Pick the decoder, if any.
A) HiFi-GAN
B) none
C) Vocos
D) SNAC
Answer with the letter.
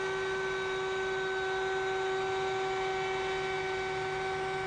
B